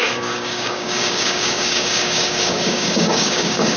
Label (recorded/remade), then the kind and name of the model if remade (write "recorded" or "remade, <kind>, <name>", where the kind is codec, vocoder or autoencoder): remade, codec, DAC